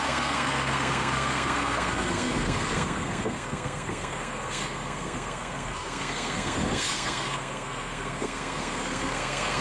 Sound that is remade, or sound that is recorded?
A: remade